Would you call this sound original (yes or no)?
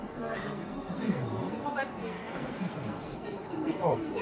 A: no